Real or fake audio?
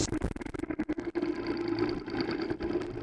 real